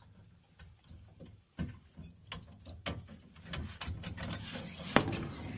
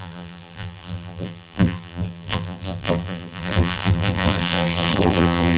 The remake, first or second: second